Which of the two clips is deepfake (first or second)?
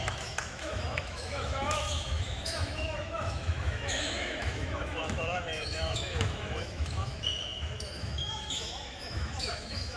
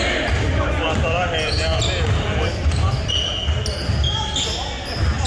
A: first